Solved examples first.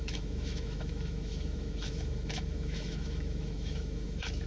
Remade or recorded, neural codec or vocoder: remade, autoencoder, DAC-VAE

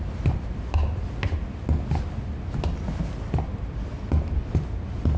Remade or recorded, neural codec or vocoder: recorded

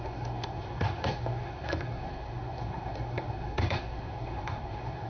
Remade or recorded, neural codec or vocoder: remade, codec, SNAC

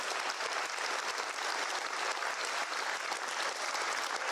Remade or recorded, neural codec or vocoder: recorded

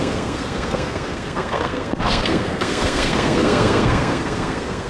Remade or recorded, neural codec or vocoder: remade, codec, SNAC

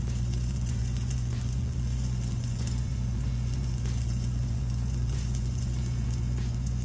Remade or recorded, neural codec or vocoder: remade, vocoder, Vocos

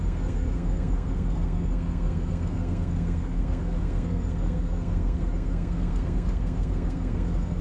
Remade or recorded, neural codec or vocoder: remade, codec, SNAC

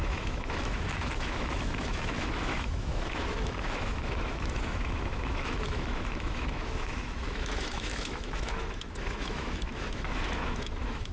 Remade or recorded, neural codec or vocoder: remade, autoencoder, DAC-VAE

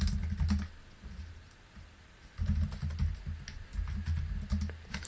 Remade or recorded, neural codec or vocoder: recorded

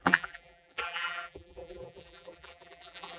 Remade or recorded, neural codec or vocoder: remade, vocoder, BigVGAN v2